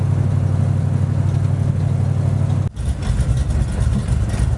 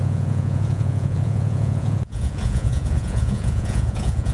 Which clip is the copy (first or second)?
second